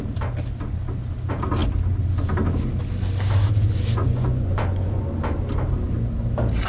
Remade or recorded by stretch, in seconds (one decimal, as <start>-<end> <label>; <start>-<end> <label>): 0.0-4.0 recorded; 4.0-5.0 remade; 5.0-6.7 recorded